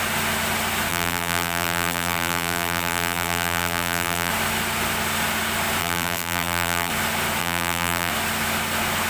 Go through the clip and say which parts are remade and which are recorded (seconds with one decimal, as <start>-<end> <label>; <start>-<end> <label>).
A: 0.0-0.9 recorded; 0.9-4.3 remade; 4.3-5.8 recorded; 5.8-6.9 remade; 6.9-7.4 recorded; 7.4-8.1 remade; 8.1-9.1 recorded